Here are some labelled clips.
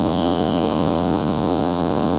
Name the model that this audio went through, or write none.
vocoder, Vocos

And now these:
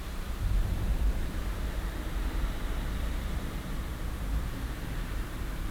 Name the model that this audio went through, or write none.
vocoder, BigVGAN v2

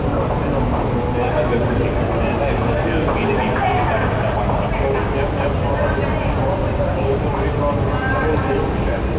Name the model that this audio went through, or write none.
none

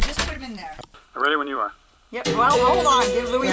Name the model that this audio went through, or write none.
vocoder, BigVGAN v2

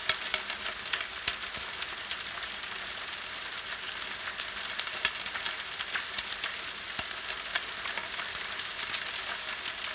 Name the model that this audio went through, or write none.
none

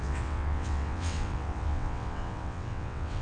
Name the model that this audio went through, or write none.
vocoder, WaveNeXt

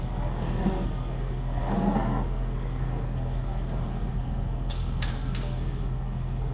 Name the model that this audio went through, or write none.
codec, SNAC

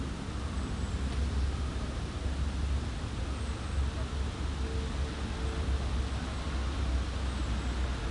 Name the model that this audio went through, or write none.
none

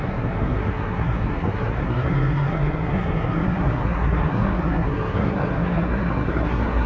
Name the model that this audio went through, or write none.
codec, SNAC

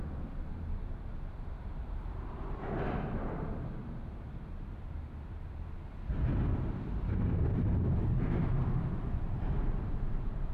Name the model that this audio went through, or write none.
vocoder, BigVGAN v2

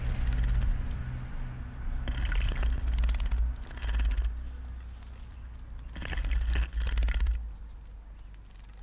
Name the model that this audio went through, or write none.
none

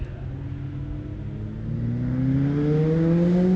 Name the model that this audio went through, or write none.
none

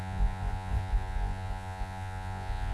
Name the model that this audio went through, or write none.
vocoder, Vocos